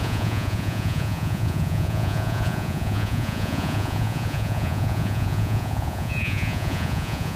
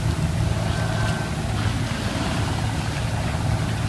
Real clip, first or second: second